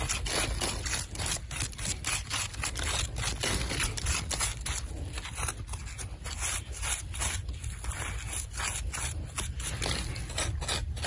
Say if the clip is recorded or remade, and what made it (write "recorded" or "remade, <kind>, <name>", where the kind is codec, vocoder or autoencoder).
recorded